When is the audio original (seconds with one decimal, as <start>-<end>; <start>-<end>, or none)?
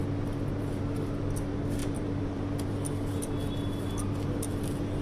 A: 0.0-1.8; 2.4-5.0